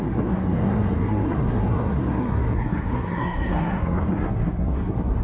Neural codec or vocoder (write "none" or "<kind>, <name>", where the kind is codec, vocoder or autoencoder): codec, SNAC